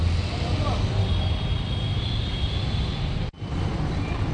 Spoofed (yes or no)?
no